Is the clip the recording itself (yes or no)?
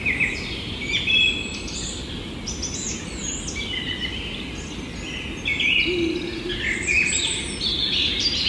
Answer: yes